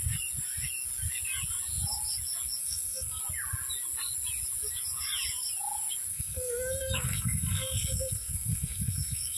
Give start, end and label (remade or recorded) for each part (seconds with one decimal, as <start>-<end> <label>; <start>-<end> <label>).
0.0-2.6 recorded; 2.6-3.2 remade; 3.2-6.1 recorded; 6.1-9.4 remade